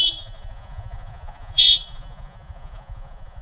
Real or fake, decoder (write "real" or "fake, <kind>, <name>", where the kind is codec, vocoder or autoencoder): fake, vocoder, Vocos